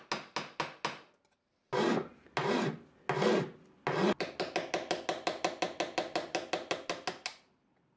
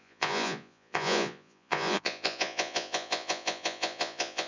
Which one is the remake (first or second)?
second